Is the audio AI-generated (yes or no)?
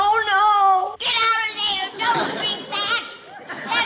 no